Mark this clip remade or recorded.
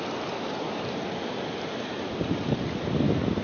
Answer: recorded